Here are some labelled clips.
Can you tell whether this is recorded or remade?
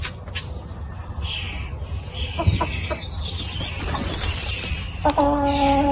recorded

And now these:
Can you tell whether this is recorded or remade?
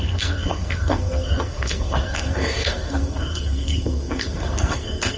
remade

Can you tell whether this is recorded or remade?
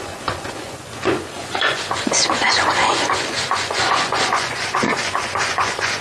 remade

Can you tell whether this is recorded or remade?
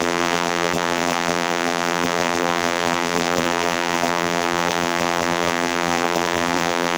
remade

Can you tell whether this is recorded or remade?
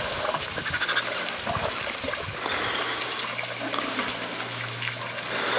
recorded